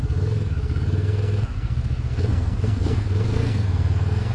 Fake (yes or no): yes